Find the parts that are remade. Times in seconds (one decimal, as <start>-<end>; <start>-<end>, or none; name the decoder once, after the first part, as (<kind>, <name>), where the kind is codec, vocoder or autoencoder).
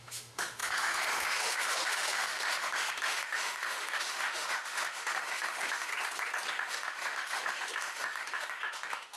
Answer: 0.0-5.9 (autoencoder, DAC-VAE); 6.5-9.2